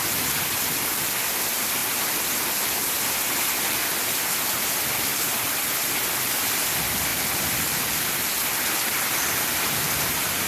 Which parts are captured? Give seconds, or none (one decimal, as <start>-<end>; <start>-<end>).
0.0-10.5